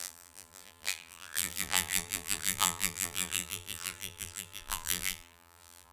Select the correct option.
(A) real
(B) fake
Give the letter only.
B